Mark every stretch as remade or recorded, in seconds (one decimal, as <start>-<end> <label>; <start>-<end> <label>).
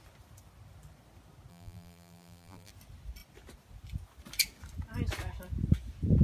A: 0.0-1.5 recorded; 1.5-2.7 remade; 2.7-6.2 recorded